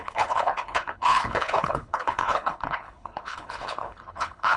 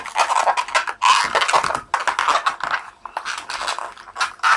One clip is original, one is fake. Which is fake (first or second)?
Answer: first